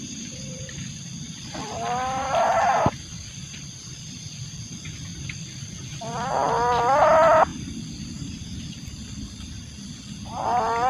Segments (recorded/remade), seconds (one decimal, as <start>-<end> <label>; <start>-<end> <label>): 0.0-5.1 recorded; 5.1-6.0 remade; 6.0-10.9 recorded

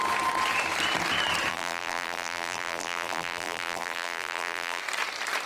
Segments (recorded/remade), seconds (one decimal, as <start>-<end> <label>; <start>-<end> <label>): 0.0-1.5 recorded; 1.5-4.8 remade; 4.8-5.5 recorded

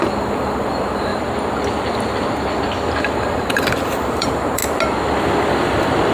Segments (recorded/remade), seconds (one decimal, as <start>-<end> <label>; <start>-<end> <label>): 0.0-1.1 remade; 1.1-3.0 recorded; 3.0-4.6 remade; 4.6-5.5 recorded; 5.5-6.1 remade

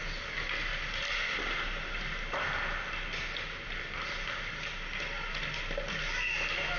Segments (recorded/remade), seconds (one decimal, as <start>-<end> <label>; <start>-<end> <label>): 0.0-6.8 recorded

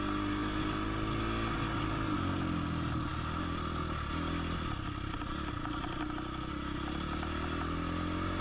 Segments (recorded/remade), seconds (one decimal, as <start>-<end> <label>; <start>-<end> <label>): 0.0-8.4 recorded

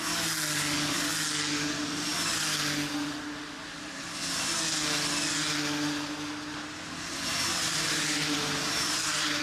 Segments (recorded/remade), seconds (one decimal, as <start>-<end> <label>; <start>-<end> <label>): 0.0-7.3 recorded; 7.3-9.4 remade

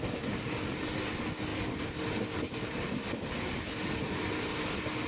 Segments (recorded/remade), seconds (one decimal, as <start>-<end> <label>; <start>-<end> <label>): 0.0-5.1 recorded

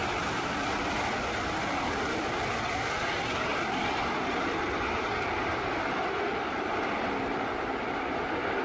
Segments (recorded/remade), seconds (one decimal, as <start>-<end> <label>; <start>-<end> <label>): 0.0-3.0 remade; 3.0-3.5 recorded; 3.5-8.6 remade